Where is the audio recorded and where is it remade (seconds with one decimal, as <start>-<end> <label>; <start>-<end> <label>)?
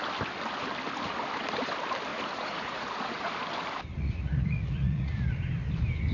0.0-2.1 recorded; 2.1-3.3 remade; 3.3-3.9 recorded; 3.9-5.3 remade; 5.3-6.1 recorded